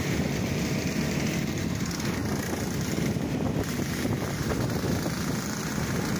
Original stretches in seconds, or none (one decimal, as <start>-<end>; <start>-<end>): 0.0-6.2